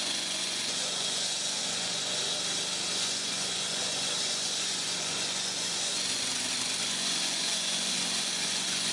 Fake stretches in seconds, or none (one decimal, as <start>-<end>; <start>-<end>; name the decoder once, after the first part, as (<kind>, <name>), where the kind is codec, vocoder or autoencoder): 0.0-2.3 (vocoder, Vocos); 2.9-8.9